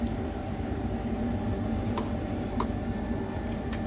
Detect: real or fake fake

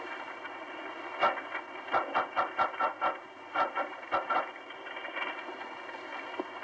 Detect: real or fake real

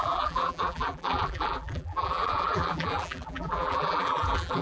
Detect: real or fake fake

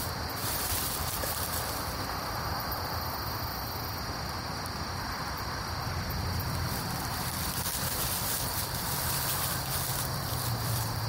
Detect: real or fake fake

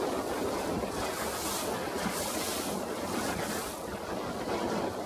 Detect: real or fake real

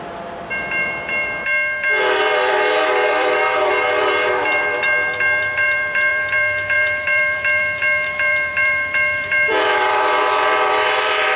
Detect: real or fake fake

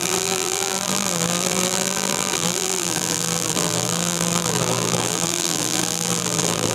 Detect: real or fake fake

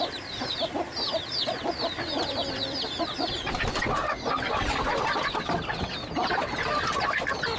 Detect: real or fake real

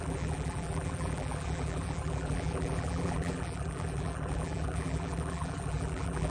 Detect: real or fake fake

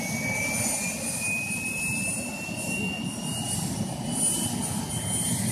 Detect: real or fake real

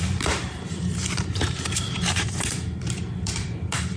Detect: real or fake fake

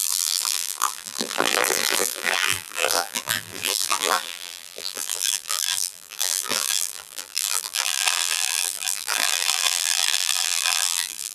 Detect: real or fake fake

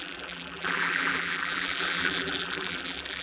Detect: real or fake fake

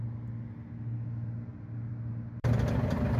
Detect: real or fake real